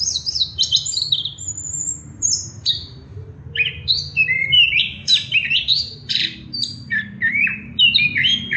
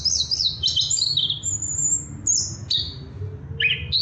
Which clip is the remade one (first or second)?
first